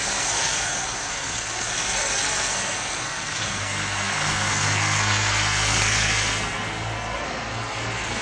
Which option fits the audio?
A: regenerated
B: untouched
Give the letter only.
A